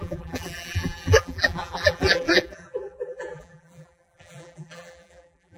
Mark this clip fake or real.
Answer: fake